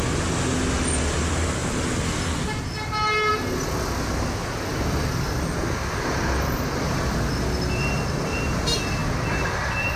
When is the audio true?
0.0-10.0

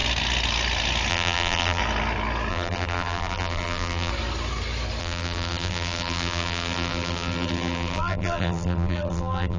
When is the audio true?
0.0-1.1; 1.8-2.5; 4.1-5.0

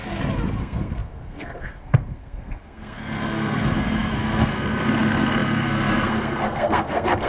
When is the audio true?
0.0-0.6

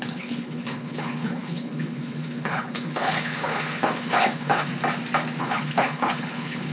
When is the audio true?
4.7-5.4